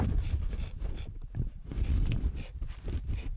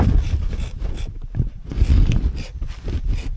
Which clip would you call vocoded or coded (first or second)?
first